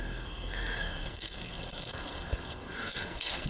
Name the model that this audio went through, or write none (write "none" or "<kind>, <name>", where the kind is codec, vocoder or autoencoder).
codec, SNAC